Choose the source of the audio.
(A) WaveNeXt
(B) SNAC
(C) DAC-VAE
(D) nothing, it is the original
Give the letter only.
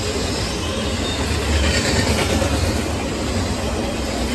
D